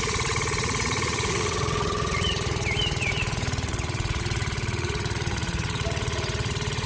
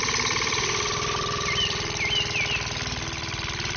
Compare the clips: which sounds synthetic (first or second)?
first